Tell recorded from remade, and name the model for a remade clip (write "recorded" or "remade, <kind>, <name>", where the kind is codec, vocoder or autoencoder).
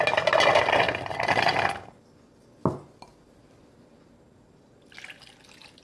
recorded